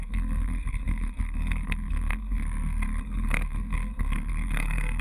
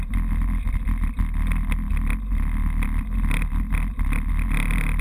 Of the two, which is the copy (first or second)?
first